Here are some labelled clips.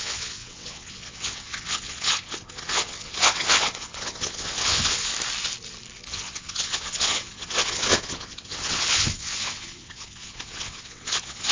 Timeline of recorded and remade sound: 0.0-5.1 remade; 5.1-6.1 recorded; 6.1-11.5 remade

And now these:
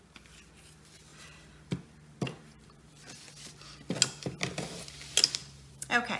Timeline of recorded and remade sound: 0.0-1.1 recorded; 1.1-2.9 remade; 2.9-5.4 recorded; 5.4-6.2 remade

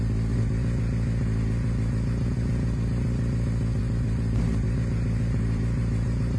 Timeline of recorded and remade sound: 0.0-3.8 recorded; 3.8-6.4 remade

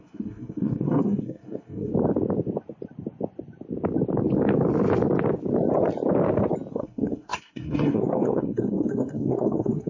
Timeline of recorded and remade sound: 0.0-1.9 remade; 1.9-6.7 recorded; 6.7-9.9 remade

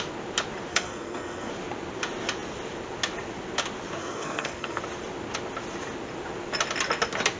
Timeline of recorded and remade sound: 0.0-0.7 recorded; 0.7-1.5 remade; 1.5-4.0 recorded; 4.0-4.8 remade; 4.8-7.4 recorded

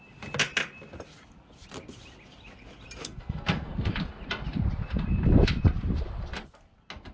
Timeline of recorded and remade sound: 0.0-3.0 recorded; 3.0-3.9 remade; 3.9-7.1 recorded

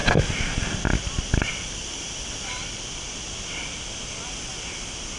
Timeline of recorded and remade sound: 0.0-2.6 recorded; 2.6-3.1 remade; 3.1-5.2 recorded

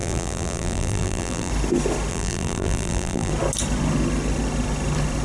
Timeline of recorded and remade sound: 0.0-1.5 remade; 1.5-2.1 recorded; 2.1-3.3 remade; 3.3-5.2 recorded